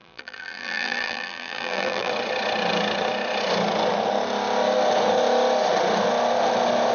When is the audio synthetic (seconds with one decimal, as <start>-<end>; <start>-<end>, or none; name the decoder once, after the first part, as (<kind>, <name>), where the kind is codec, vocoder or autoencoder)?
0.0-2.1 (vocoder, BigVGAN v2)